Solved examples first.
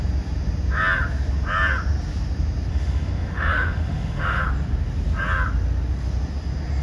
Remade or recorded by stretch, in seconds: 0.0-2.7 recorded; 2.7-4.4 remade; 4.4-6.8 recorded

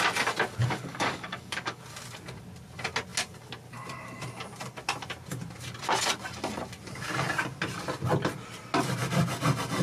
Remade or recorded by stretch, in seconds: 0.0-0.6 recorded; 0.6-1.8 remade; 1.8-9.8 recorded

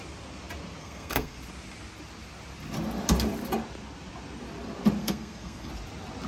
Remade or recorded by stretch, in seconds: 0.0-0.8 recorded; 0.8-1.4 remade; 1.4-5.0 recorded; 5.0-5.7 remade; 5.7-6.3 recorded

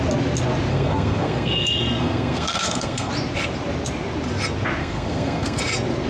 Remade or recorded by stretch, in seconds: 0.0-0.7 recorded; 0.7-3.1 remade; 3.1-4.8 recorded; 4.8-5.6 remade; 5.6-6.1 recorded

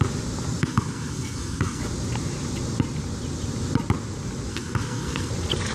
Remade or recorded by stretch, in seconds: 0.0-0.6 recorded; 0.6-1.8 remade; 1.8-4.5 recorded; 4.5-5.3 remade; 5.3-5.7 recorded

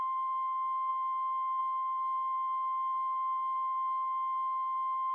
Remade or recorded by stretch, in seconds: 0.0-5.1 remade

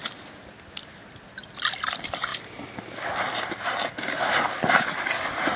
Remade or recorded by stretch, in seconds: 0.0-5.6 recorded

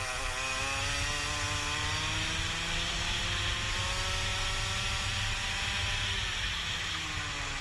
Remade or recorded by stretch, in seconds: 0.0-7.6 recorded